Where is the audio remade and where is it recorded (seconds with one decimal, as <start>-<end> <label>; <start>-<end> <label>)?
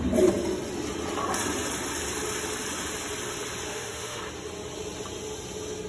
0.0-3.7 recorded; 3.7-4.2 remade; 4.2-5.9 recorded